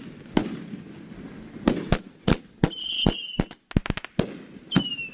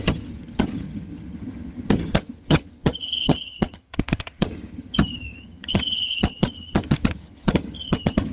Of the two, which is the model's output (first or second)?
second